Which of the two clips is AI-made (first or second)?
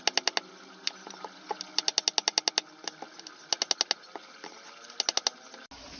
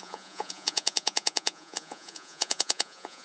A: second